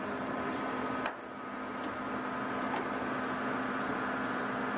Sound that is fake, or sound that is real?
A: real